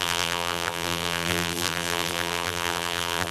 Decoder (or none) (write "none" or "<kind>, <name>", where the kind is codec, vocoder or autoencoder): vocoder, BigVGAN v2